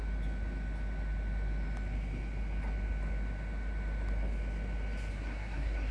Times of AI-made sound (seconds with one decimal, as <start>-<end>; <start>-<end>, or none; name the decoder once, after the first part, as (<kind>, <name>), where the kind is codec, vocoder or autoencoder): 5.1-5.9 (codec, SNAC)